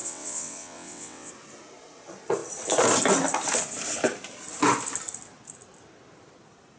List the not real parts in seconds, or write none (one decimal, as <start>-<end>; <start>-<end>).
0.0-1.3